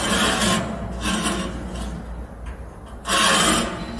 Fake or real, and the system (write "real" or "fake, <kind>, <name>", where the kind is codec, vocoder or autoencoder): real